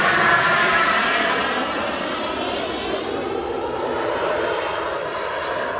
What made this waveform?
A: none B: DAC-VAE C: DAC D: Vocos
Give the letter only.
A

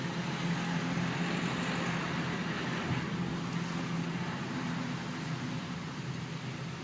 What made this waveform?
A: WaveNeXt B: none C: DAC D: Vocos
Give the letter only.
B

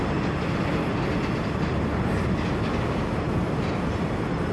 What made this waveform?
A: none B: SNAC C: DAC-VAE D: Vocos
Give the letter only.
A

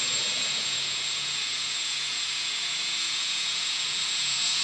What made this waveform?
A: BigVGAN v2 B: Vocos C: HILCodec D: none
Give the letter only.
B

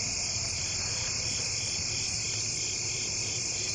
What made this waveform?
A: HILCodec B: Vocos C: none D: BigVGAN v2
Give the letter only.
C